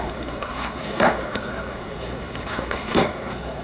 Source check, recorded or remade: remade